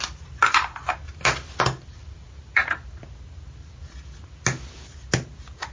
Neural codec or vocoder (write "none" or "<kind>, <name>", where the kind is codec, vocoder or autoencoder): none